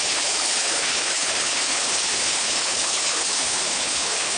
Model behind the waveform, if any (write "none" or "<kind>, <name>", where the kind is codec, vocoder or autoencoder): codec, HILCodec